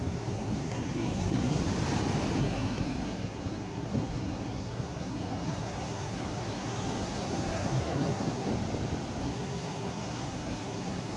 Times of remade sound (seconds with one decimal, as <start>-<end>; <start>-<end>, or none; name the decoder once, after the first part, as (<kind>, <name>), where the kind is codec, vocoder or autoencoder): 0.0-1.6 (codec, SNAC); 2.4-8.5; 9.2-11.2